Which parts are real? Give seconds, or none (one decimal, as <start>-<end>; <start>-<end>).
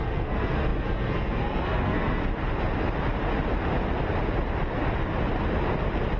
2.2-6.2